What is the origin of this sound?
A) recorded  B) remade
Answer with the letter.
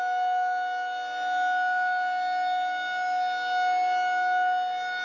A